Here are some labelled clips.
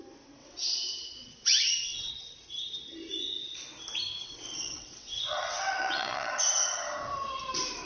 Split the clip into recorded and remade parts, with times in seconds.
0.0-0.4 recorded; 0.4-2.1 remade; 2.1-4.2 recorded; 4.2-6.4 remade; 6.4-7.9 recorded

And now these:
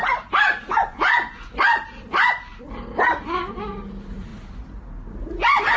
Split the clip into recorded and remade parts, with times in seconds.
0.0-0.9 recorded; 0.9-1.5 remade; 1.5-5.8 recorded

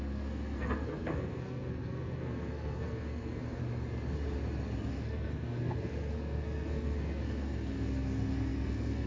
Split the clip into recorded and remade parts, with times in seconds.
0.0-3.6 remade; 3.6-4.9 recorded; 4.9-9.1 remade

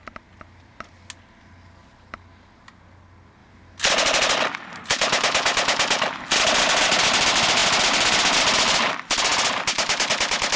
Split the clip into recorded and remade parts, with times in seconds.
0.0-10.6 recorded

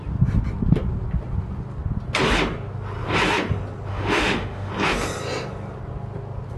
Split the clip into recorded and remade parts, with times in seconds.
0.0-3.9 recorded; 3.9-4.7 remade; 4.7-6.6 recorded

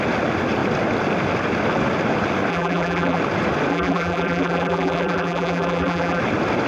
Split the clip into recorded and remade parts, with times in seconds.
0.0-2.5 recorded; 2.5-3.2 remade; 3.2-3.7 recorded; 3.7-6.2 remade; 6.2-6.7 recorded

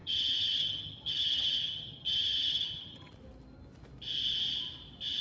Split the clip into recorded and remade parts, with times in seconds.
0.0-3.1 remade; 3.1-5.2 recorded

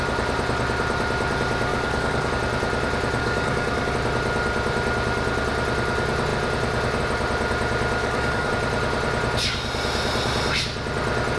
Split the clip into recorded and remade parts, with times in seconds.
0.0-1.7 recorded; 1.7-2.3 remade; 2.3-3.2 recorded; 3.2-3.9 remade; 3.9-8.0 recorded; 8.0-8.5 remade; 8.5-11.4 recorded